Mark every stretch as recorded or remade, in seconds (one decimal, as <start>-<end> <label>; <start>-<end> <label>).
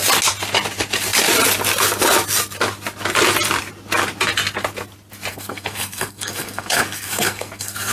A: 0.0-5.3 recorded; 5.3-7.9 remade